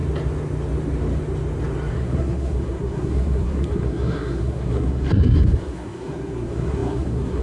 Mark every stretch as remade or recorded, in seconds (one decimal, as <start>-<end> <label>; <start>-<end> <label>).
0.0-1.9 recorded; 1.9-7.4 remade